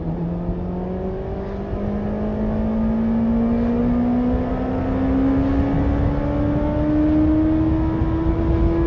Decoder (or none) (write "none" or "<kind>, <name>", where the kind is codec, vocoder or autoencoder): none